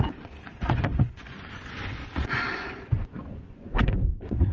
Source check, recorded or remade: remade